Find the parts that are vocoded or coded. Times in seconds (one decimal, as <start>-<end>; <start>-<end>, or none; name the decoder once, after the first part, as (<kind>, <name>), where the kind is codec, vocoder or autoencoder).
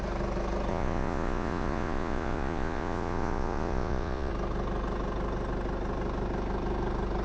0.7-4.3 (vocoder, Vocos)